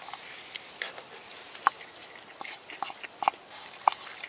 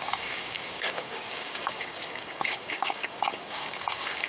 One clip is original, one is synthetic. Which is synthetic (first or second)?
second